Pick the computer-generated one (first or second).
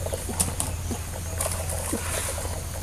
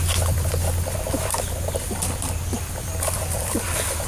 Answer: second